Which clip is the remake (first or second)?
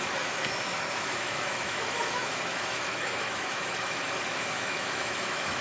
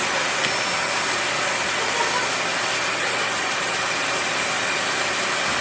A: first